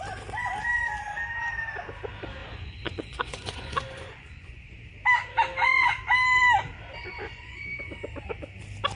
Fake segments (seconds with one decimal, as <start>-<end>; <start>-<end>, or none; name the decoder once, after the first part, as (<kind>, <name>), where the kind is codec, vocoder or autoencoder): 2.4-4.9 (vocoder, Vocos); 7.0-7.8